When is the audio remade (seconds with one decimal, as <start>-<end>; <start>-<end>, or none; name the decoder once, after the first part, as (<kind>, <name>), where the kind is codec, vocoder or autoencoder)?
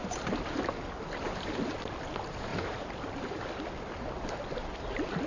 0.0-1.8 (vocoder, BigVGAN v2); 2.5-3.1